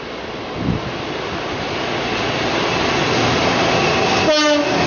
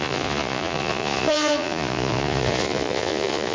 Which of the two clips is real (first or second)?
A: first